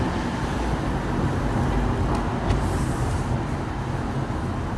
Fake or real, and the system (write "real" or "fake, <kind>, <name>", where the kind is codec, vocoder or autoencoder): real